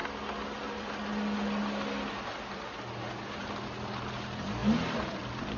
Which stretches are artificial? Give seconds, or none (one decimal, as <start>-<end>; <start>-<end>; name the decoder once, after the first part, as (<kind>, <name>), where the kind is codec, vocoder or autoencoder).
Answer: none